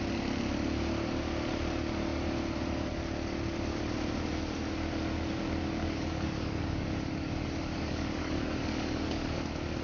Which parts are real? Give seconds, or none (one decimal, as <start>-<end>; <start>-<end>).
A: 0.0-5.8; 9.4-9.8